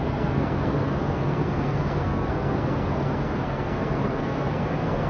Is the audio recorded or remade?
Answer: remade